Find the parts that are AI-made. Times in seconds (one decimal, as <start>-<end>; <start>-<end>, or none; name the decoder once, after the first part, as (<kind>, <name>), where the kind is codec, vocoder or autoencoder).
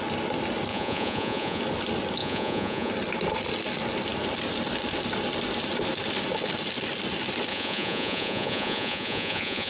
0.7-1.6 (vocoder, Vocos); 2.2-2.9; 7.5-9.7